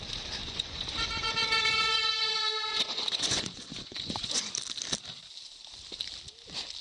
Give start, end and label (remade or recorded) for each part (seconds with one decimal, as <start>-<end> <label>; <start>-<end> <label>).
0.0-0.4 recorded; 0.4-4.5 remade; 4.5-6.8 recorded